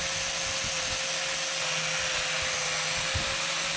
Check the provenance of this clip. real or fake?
real